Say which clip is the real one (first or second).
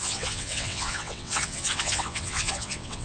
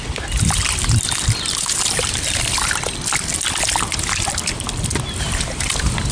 second